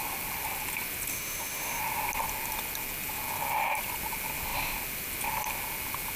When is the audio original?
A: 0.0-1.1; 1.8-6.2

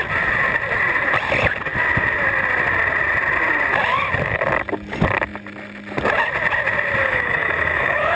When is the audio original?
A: 0.0-7.0

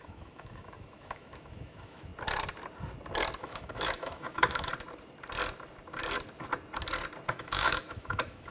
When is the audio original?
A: 2.1-3.4; 4.7-7.3

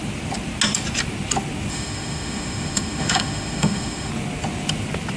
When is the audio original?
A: 0.0-1.7; 4.1-5.2

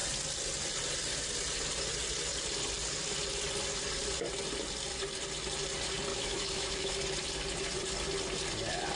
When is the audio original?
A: 0.0-6.1; 6.9-9.0

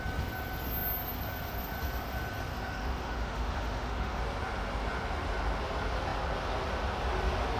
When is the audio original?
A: 0.0-2.5; 4.2-7.6